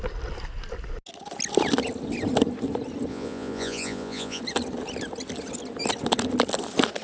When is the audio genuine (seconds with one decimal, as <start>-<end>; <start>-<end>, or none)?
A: 0.0-3.1; 4.4-7.0